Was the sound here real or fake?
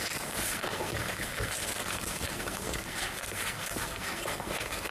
fake